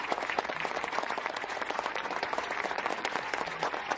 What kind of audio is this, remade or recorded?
remade